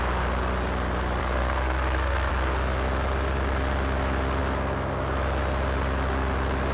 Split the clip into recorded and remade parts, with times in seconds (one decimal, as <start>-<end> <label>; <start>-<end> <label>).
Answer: 0.0-1.2 recorded; 1.2-2.3 remade; 2.3-6.7 recorded